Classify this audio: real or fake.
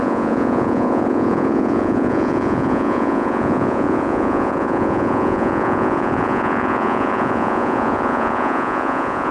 fake